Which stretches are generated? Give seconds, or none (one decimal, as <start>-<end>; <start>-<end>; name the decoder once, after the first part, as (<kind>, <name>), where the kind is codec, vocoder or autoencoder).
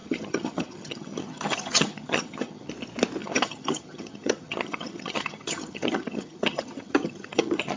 0.0-2.7 (vocoder, HiFi-GAN); 3.2-7.8